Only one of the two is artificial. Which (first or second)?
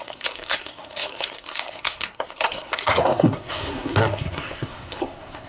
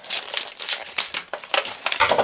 first